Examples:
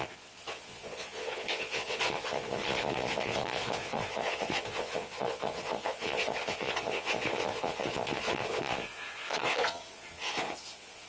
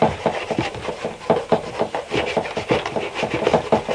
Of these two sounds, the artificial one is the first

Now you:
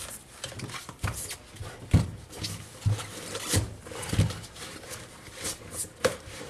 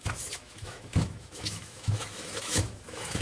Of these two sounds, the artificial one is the second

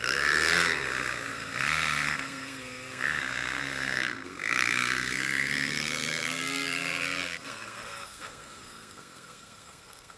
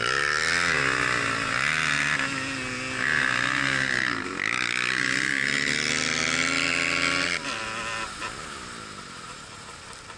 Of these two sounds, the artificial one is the first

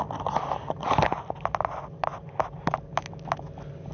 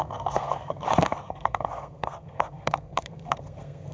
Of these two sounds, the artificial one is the second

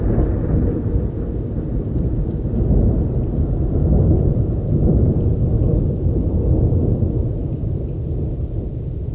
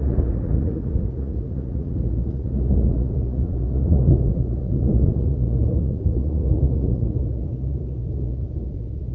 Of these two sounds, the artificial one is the second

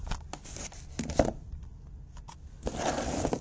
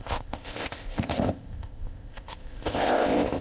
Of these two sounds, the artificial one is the second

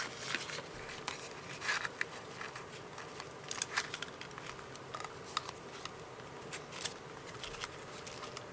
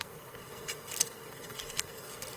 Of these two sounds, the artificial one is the second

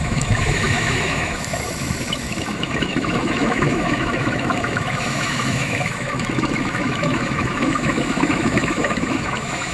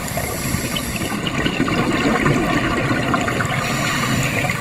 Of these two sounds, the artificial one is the first